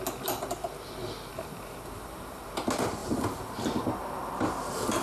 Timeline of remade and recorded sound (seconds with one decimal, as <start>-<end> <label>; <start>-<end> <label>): 0.0-1.3 recorded; 1.3-2.5 remade; 2.5-5.0 recorded